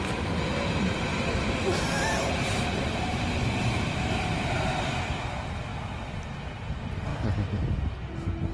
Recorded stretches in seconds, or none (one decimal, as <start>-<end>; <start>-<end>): 0.0-1.1; 4.9-7.1; 7.8-8.5